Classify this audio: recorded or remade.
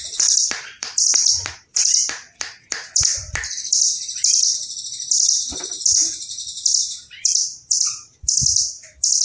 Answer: remade